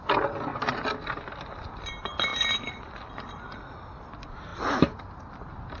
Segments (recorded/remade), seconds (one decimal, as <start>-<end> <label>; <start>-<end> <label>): 0.0-5.8 recorded